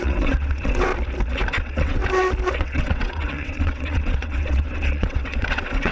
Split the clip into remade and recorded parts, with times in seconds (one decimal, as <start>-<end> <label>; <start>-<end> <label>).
0.0-0.9 remade; 0.9-1.5 recorded; 1.5-2.0 remade; 2.0-2.6 recorded; 2.6-5.9 remade